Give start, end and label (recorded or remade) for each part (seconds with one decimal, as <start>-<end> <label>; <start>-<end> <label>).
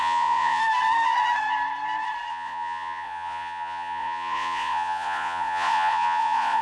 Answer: 0.0-0.6 remade; 0.6-2.3 recorded; 2.3-6.6 remade